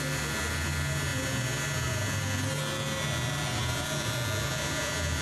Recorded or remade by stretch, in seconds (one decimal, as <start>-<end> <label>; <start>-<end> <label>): 0.0-5.2 recorded